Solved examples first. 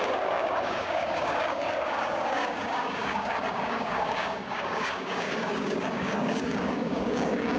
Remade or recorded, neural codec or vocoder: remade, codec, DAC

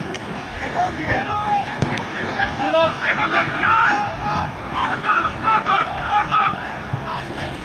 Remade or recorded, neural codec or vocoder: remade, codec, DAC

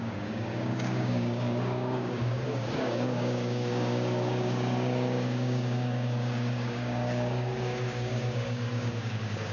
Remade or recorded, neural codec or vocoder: remade, codec, DAC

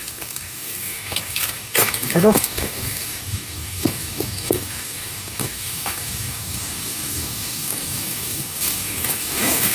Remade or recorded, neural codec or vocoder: remade, codec, DAC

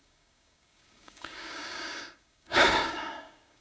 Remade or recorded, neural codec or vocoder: remade, codec, DAC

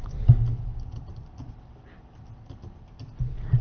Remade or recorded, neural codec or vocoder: recorded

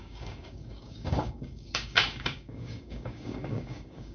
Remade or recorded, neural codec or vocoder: remade, codec, DAC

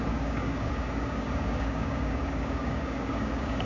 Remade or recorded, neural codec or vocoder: remade, codec, DAC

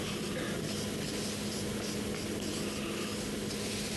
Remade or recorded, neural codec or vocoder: recorded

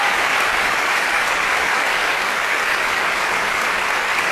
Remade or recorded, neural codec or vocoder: remade, codec, DAC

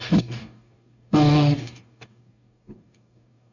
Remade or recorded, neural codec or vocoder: remade, codec, DAC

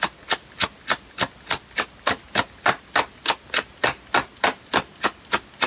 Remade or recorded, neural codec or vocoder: recorded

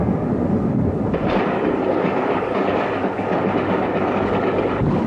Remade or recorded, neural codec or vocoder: remade, codec, DAC